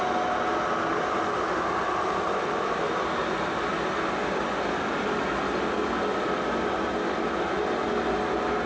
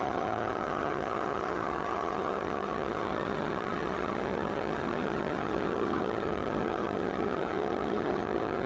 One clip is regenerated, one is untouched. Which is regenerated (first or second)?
second